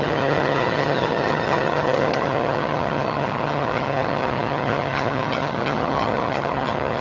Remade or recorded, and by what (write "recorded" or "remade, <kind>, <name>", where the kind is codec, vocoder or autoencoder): remade, vocoder, HiFi-GAN